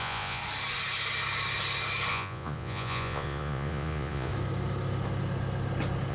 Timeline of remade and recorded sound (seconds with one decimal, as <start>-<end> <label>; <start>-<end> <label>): 0.0-0.4 remade; 0.4-2.1 recorded; 2.1-4.3 remade; 4.3-6.1 recorded